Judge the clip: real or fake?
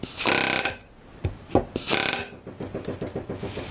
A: real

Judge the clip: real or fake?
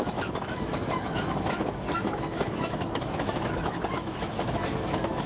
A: fake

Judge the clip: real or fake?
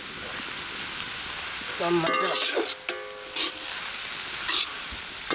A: real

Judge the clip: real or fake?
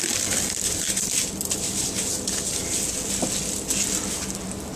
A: real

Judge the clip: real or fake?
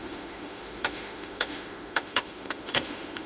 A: fake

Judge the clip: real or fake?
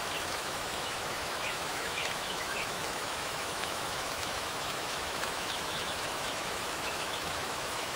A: fake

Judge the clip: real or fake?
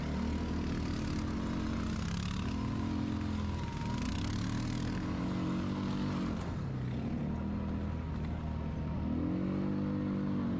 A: real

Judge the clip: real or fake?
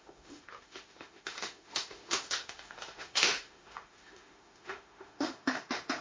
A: fake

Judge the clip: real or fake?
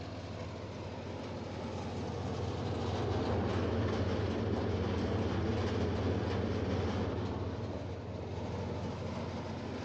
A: real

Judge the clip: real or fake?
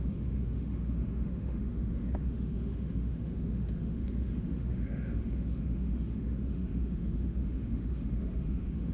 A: fake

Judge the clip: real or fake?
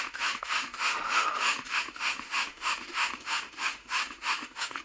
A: fake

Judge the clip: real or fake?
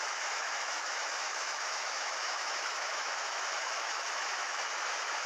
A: fake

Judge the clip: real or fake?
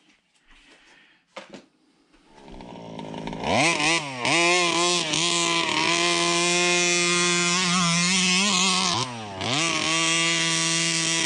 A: real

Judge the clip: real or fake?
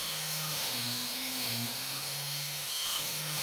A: fake